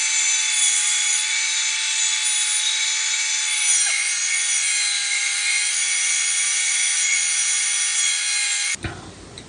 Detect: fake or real real